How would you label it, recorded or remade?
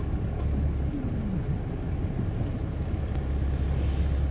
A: recorded